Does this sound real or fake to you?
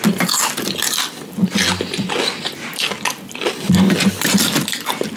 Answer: real